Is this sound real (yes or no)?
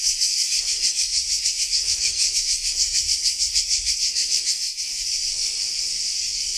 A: no